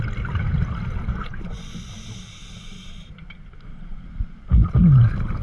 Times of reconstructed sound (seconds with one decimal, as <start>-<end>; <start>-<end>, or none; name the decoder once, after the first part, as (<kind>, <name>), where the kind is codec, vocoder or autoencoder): 1.1-1.9 (vocoder, Vocos)